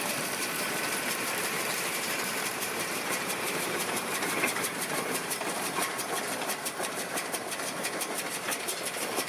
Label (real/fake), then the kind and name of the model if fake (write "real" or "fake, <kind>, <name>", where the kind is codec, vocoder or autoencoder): fake, vocoder, BigVGAN v2